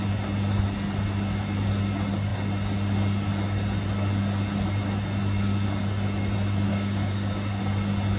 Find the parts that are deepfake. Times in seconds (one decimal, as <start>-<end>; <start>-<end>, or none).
6.7-7.6